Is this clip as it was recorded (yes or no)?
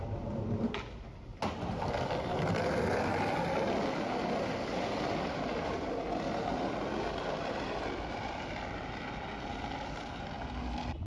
yes